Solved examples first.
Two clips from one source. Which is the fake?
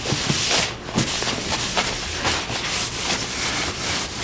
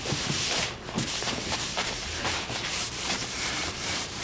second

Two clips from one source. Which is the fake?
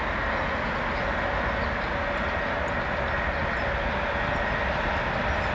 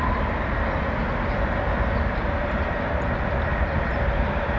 second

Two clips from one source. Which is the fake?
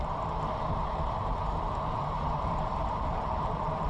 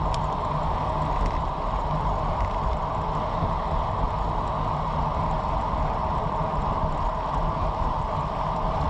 first